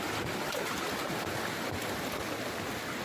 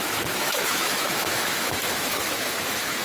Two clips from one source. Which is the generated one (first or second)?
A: second